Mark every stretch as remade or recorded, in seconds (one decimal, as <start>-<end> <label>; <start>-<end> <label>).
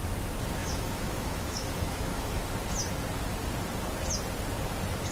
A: 0.0-0.6 recorded; 0.6-2.4 remade; 2.4-5.1 recorded